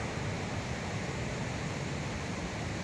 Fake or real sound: fake